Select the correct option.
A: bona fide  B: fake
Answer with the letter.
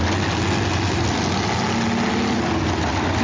A